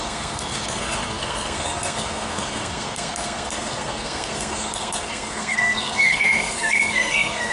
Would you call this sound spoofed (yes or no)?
yes